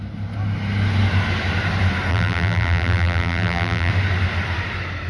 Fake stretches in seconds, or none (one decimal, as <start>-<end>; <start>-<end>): 2.1-3.9